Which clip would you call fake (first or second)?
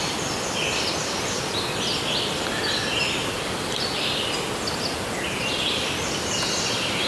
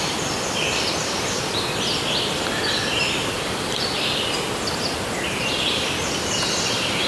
second